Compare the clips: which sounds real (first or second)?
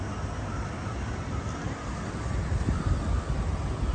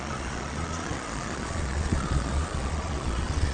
first